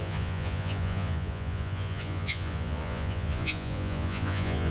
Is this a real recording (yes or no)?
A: no